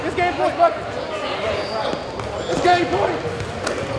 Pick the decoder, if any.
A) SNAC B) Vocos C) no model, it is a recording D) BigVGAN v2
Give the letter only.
C